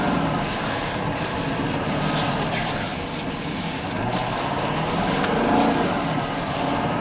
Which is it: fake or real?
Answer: real